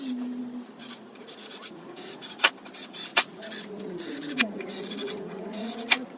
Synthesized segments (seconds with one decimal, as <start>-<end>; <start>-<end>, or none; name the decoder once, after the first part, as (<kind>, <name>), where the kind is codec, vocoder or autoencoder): 0.8-2.5 (vocoder, Vocos); 3.1-6.2